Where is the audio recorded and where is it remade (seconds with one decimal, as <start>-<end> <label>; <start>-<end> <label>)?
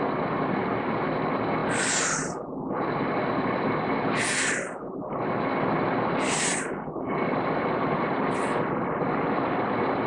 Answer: 0.0-10.1 recorded